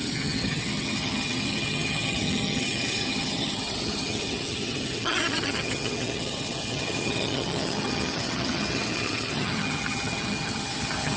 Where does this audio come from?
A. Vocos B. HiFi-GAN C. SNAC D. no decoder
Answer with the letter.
B